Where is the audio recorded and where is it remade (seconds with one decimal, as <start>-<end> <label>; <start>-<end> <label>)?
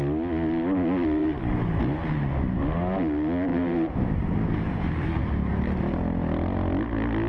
0.0-1.2 recorded; 1.2-1.8 remade; 1.8-3.5 recorded; 3.5-5.2 remade; 5.2-7.3 recorded